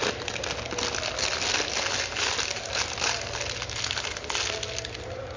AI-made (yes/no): no